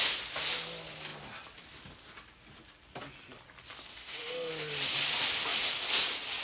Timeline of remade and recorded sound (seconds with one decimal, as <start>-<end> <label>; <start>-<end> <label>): 0.0-3.9 recorded; 3.9-4.5 remade; 4.5-6.4 recorded